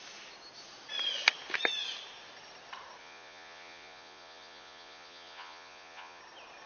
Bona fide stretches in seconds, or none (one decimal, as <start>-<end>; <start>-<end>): 0.0-3.0; 6.2-6.7